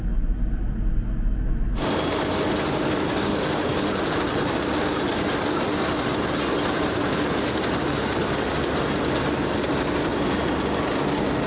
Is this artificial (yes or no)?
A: no